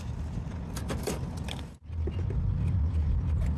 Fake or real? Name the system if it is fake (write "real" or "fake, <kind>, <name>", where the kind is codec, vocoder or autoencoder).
real